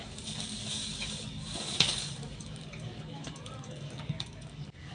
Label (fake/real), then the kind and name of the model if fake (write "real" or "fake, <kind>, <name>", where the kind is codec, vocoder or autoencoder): fake, codec, DAC